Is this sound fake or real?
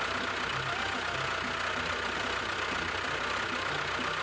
real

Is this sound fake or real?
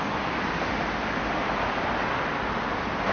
real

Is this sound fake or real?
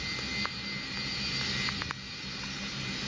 real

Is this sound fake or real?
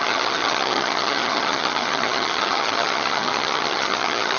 fake